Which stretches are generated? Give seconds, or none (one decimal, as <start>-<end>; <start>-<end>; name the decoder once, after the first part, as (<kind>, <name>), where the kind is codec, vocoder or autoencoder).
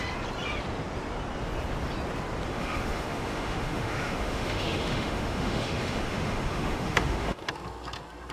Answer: 2.5-7.5 (autoencoder, DAC-VAE)